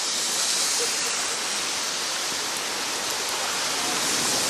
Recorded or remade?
recorded